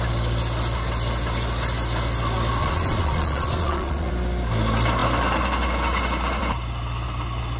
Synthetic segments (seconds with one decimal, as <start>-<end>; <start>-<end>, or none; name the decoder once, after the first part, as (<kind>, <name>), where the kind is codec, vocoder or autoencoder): 2.6-4.1 (vocoder, Vocos)